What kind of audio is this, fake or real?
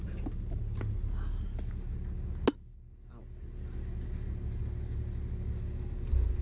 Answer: real